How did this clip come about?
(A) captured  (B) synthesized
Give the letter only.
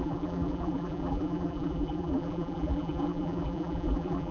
B